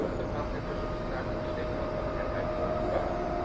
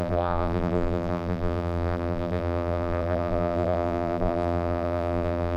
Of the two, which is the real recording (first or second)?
first